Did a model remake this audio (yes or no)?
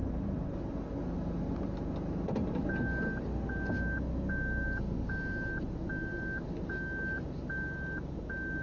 no